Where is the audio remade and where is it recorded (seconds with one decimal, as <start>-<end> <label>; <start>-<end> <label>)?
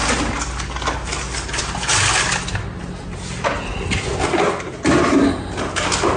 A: 0.0-6.2 recorded